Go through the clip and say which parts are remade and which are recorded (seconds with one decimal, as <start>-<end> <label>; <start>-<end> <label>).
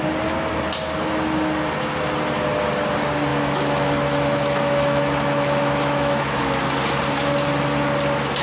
0.0-3.3 recorded; 3.3-6.4 remade; 6.4-8.4 recorded